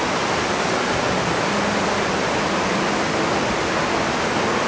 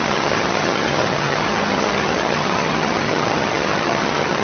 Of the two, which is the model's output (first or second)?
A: second